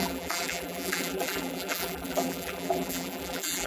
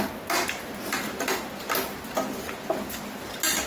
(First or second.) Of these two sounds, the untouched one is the second